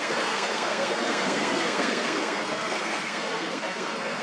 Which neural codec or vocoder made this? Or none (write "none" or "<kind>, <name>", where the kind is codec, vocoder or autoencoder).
codec, SNAC